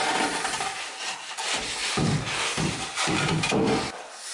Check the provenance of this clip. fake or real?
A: real